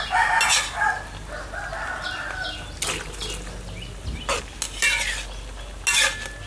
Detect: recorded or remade recorded